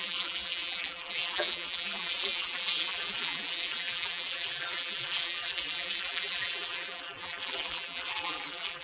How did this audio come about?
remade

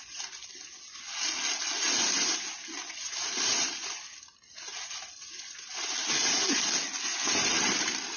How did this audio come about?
recorded